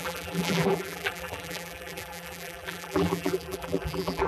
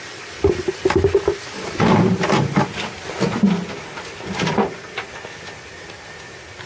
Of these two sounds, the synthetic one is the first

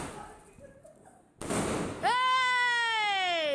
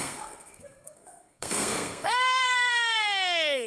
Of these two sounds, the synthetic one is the second